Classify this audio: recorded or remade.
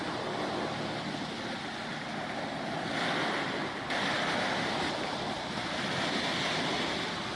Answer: recorded